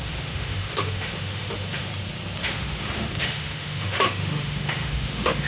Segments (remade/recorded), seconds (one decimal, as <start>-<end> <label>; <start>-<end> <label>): 0.0-1.9 remade; 1.9-2.4 recorded; 2.4-5.5 remade